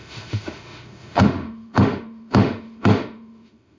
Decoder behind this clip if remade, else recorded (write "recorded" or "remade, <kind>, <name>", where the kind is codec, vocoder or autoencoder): remade, autoencoder, DAC-VAE